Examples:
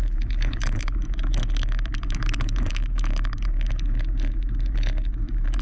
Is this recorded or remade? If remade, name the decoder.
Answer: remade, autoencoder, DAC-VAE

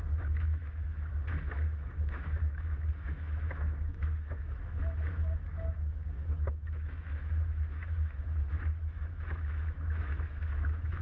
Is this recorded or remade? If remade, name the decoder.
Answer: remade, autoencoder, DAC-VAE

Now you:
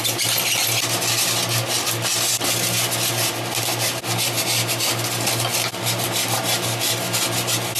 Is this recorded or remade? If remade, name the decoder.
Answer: recorded